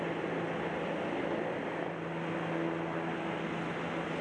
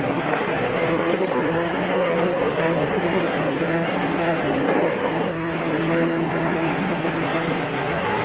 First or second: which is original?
first